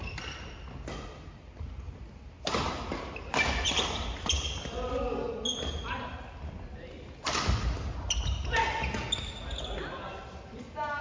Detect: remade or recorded recorded